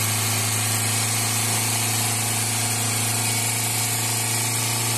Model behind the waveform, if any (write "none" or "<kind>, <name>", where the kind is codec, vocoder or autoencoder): none